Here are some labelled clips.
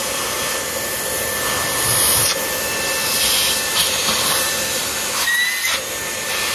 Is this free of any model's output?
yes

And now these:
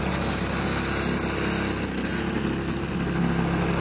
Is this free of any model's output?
yes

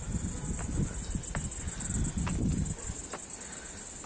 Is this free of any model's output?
yes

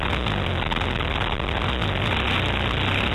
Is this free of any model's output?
yes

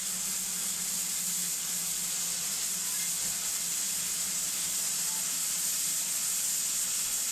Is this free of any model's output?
yes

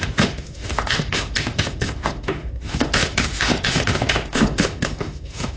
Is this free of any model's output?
no